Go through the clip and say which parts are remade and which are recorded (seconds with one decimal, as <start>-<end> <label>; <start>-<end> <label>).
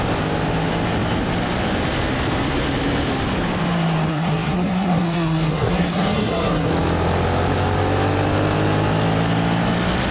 0.0-4.1 recorded; 4.1-6.7 remade; 6.7-10.1 recorded